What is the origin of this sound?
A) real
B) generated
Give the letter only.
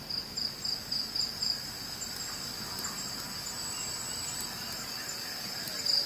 A